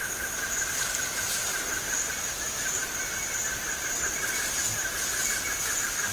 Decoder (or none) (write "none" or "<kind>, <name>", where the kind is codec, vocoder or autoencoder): none